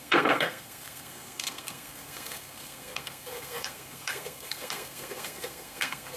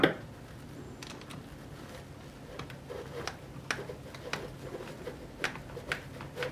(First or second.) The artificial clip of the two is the first